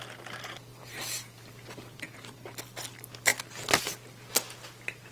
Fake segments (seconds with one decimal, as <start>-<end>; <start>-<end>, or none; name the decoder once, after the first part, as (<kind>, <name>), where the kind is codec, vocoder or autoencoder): 0.7-2.6 (vocoder, BigVGAN v2)